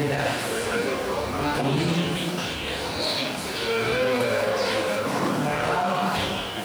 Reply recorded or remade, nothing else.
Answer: remade